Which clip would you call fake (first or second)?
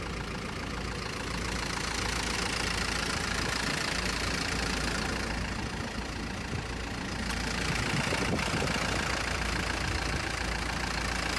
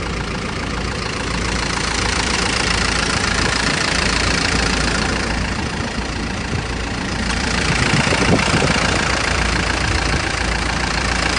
second